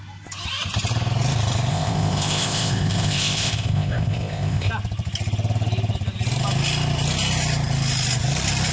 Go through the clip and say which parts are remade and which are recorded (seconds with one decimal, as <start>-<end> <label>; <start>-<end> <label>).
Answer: 0.0-1.7 recorded; 1.7-4.7 remade; 4.7-8.7 recorded